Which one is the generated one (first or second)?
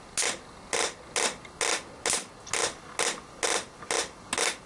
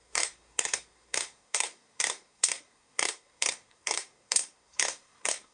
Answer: second